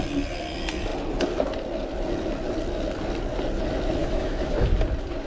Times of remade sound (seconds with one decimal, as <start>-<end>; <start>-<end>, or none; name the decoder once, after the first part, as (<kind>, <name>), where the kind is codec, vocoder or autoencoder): 4.0-4.7 (autoencoder, DAC-VAE)